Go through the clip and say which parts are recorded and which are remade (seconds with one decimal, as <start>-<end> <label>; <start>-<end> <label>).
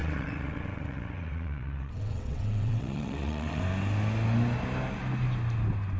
0.0-3.6 remade; 3.6-6.0 recorded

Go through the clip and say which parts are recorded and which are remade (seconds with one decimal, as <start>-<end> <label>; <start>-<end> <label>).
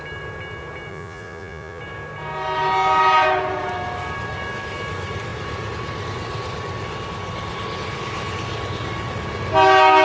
0.0-0.9 recorded; 0.9-1.8 remade; 1.8-10.0 recorded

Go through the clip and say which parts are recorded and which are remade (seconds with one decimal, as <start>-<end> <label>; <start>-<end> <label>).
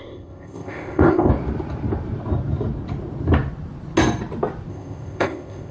0.0-1.3 remade; 1.3-4.7 recorded; 4.7-5.7 remade